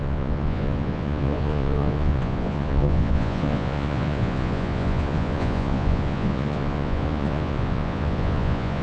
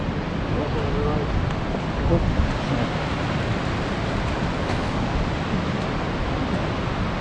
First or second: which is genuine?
second